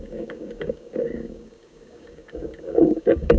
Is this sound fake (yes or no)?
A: yes